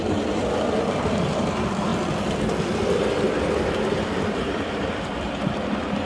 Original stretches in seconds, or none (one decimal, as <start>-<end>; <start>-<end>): 1.9-3.4